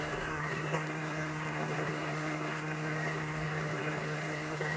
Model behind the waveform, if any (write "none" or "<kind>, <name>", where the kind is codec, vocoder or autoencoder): codec, SNAC